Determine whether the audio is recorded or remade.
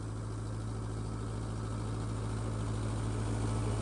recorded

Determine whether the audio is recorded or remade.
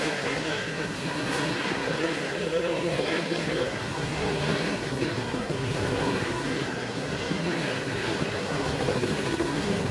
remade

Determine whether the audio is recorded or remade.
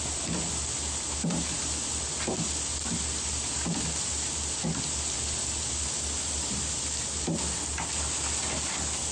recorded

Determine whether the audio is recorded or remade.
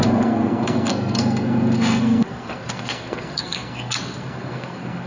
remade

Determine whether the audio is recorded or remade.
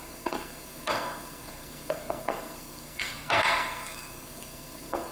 remade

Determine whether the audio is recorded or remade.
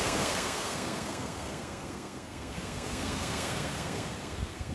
remade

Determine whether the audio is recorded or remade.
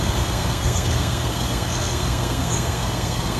remade